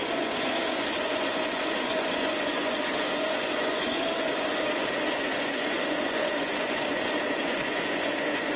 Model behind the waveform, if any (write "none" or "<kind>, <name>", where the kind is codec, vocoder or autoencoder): vocoder, Vocos